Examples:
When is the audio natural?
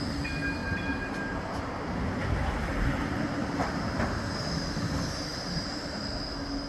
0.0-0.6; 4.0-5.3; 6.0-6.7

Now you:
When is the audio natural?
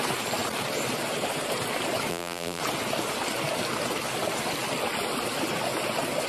0.0-2.1; 2.6-6.3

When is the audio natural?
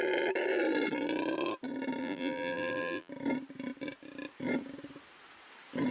0.0-2.0; 3.1-5.9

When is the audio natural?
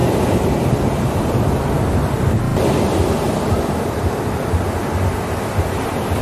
1.4-2.5; 4.2-6.2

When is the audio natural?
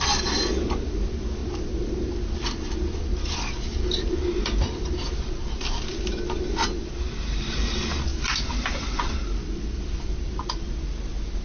0.0-1.4; 5.8-8.1; 10.4-11.4